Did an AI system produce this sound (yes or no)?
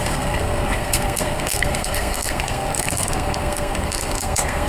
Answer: yes